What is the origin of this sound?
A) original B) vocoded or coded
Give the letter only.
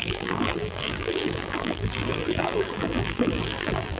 B